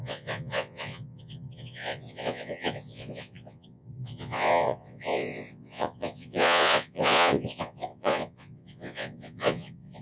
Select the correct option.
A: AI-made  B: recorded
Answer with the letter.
A